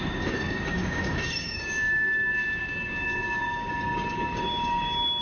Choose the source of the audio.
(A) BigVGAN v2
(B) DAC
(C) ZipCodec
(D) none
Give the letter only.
B